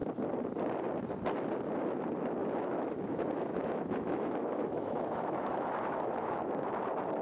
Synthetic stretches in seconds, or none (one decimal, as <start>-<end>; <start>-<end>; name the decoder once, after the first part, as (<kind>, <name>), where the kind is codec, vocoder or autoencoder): 2.4-6.7 (autoencoder, DAC-VAE)